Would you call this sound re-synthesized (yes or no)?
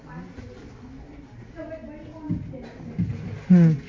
no